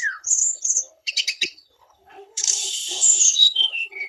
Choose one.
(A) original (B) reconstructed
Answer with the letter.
B